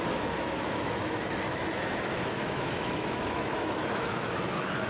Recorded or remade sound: remade